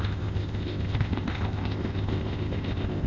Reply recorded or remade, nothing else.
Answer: remade